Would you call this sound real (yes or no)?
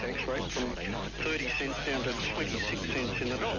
yes